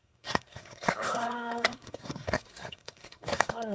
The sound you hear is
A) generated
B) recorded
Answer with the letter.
A